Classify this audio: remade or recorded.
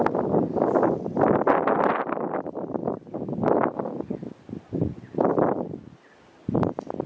recorded